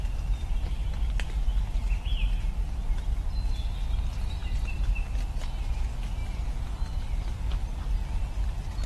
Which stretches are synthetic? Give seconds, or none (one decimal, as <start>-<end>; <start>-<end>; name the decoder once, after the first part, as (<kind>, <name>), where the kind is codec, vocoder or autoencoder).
none